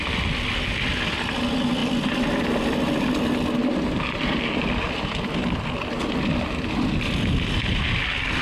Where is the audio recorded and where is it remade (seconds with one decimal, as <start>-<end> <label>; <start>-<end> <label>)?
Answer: 0.0-8.4 recorded